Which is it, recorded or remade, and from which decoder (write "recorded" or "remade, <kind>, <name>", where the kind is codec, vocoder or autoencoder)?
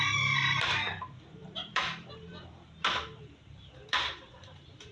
remade, vocoder, BigVGAN v2